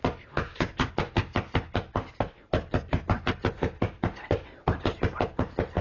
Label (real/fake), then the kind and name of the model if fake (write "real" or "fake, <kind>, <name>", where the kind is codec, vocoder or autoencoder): real